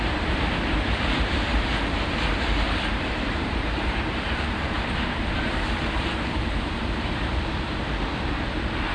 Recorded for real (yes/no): no